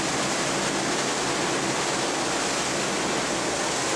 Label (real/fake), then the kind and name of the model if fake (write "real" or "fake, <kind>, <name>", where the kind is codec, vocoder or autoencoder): real